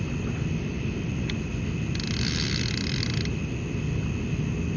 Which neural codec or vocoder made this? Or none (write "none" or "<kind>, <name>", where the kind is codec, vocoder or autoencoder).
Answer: none